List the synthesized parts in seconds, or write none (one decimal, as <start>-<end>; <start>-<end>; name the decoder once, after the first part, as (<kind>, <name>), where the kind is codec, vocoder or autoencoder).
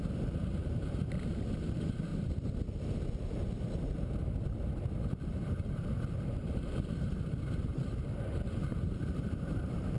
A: 0.0-2.1 (vocoder, BigVGAN v2); 3.5-10.0